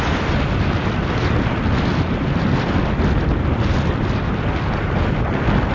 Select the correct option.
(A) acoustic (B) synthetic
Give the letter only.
A